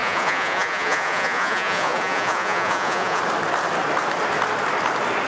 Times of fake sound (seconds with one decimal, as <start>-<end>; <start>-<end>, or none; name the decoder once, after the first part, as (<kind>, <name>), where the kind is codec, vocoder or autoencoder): 0.0-3.2 (vocoder, Vocos)